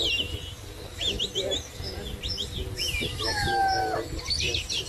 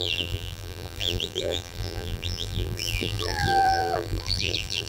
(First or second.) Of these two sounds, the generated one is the second